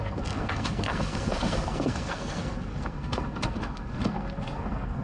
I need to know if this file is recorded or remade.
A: remade